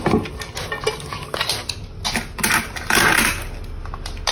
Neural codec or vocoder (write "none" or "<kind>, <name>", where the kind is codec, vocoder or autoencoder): none